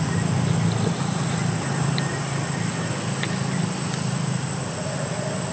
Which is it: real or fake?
real